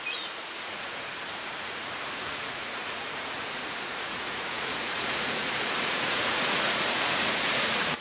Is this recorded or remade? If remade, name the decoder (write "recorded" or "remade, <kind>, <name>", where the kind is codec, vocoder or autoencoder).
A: remade, vocoder, Vocos